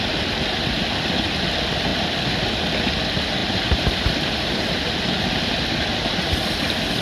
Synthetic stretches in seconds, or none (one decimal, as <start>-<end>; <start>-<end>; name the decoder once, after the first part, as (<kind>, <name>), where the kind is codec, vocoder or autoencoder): 3.4-4.7 (vocoder, BigVGAN v2)